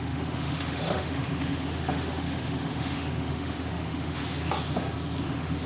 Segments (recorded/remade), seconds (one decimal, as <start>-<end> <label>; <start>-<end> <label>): 0.0-4.2 remade; 4.2-5.2 recorded; 5.2-5.7 remade